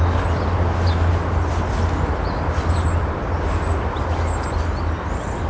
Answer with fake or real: real